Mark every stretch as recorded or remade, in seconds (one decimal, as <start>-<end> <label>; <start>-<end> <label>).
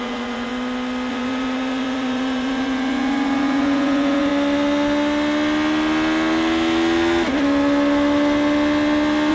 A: 0.0-0.5 remade; 0.5-1.1 recorded; 1.1-4.3 remade; 4.3-9.3 recorded